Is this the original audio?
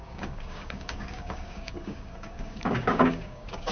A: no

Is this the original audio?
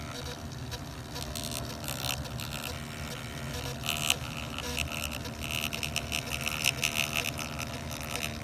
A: yes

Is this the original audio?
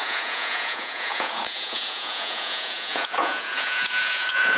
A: no